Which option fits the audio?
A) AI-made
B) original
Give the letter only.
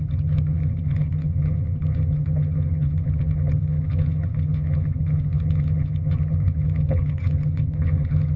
A